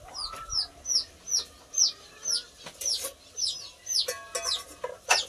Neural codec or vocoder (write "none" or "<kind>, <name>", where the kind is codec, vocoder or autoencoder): none